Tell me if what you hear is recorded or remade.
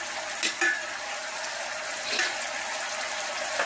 recorded